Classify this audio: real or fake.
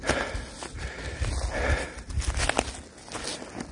real